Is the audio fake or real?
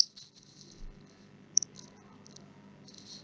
real